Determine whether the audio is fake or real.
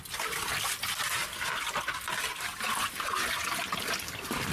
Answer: real